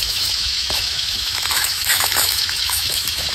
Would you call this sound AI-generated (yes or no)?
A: yes